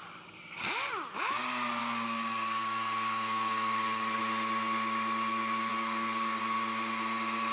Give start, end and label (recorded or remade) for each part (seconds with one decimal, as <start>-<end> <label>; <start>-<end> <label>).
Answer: 0.0-1.8 recorded; 1.8-4.2 remade; 4.2-5.7 recorded; 5.7-6.4 remade; 6.4-7.5 recorded